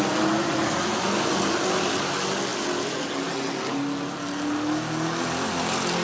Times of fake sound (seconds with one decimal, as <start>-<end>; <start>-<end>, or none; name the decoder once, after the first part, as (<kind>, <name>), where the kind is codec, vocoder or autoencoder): none